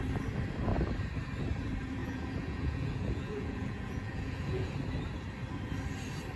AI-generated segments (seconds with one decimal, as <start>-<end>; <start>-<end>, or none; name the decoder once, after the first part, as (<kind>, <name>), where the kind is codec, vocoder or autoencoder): 2.0-4.7 (vocoder, Vocos)